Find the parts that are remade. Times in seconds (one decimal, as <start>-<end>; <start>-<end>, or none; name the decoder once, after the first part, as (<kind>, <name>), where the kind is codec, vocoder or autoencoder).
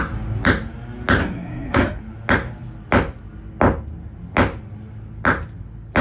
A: 1.2-2.0 (codec, SNAC)